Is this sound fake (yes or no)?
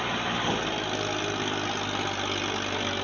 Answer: no